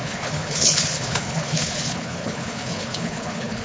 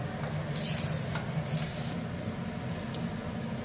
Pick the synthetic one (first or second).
first